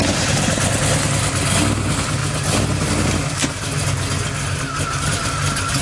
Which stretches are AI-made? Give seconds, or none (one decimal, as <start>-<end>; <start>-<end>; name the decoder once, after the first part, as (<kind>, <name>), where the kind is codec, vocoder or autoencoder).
none